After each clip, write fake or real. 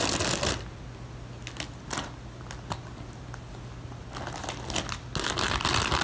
real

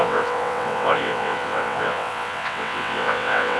fake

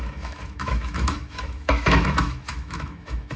fake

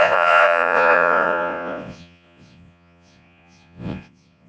fake